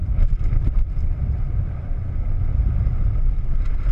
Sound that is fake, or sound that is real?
real